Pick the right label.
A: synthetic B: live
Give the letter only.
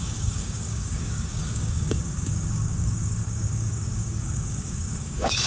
A